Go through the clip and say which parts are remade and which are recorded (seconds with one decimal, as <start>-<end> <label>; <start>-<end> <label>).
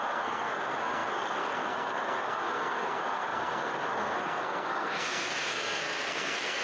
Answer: 0.0-6.6 remade